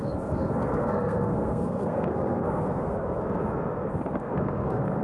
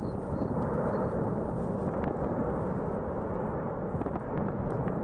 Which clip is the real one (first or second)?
second